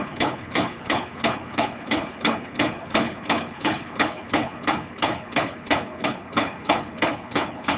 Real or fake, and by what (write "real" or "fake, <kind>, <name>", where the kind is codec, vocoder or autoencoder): fake, codec, HILCodec